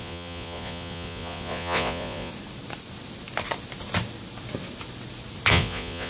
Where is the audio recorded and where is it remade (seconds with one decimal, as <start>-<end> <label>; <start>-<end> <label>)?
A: 0.0-2.3 remade; 2.3-5.5 recorded; 5.5-6.1 remade